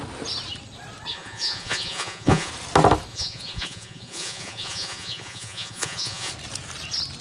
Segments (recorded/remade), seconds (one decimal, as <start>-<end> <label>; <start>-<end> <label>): 0.0-1.1 recorded; 1.1-2.5 remade; 2.5-3.1 recorded; 3.1-6.3 remade; 6.3-7.2 recorded